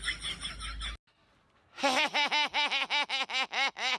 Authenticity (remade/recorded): recorded